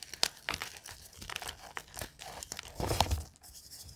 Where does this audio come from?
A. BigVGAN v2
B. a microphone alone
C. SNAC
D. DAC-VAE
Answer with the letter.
B